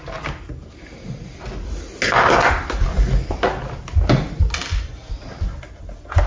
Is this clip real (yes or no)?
yes